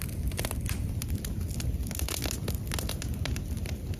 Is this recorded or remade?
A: recorded